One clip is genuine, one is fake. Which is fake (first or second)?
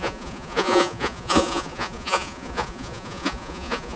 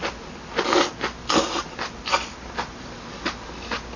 first